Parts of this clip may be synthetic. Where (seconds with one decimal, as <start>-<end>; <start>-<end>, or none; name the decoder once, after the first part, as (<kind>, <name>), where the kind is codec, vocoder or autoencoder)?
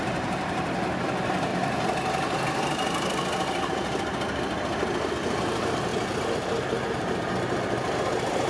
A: 0.0-1.5 (vocoder, BigVGAN v2); 5.4-5.9; 6.9-8.5